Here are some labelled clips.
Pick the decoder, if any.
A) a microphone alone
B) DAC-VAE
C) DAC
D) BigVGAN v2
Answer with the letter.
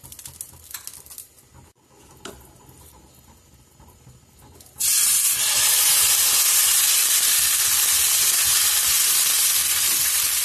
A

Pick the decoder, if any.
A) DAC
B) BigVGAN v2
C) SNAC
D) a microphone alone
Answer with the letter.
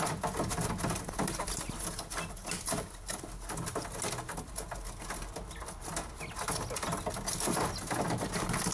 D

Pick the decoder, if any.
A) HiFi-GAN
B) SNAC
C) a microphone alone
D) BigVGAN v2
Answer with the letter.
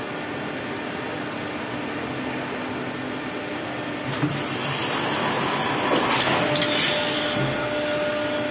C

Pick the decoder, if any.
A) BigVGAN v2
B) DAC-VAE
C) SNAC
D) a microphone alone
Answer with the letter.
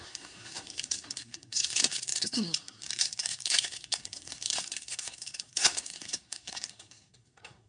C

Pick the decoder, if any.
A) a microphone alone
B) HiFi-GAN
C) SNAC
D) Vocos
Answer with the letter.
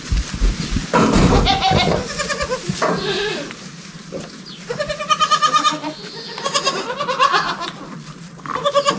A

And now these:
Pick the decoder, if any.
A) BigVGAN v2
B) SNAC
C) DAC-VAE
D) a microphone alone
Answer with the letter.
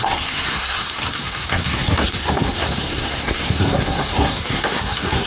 B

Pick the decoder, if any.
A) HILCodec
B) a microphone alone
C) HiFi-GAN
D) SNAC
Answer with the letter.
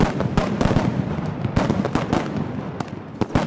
B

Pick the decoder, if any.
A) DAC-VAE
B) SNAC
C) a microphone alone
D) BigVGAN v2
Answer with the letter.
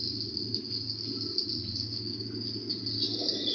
C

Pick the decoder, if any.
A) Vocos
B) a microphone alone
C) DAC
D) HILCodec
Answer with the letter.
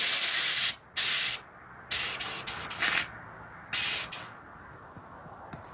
B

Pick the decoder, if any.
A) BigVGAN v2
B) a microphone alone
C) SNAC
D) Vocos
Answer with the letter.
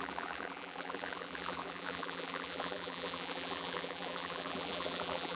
A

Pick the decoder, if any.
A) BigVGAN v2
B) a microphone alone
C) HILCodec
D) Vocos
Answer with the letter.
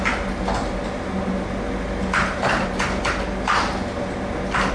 B